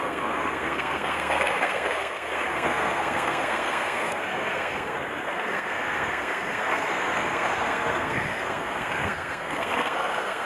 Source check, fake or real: fake